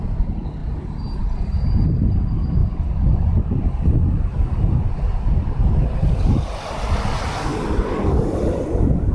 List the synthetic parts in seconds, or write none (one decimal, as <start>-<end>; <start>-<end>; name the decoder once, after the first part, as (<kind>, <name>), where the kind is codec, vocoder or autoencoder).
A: none